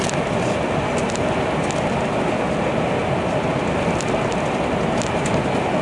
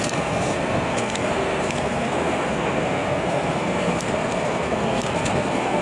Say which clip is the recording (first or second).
first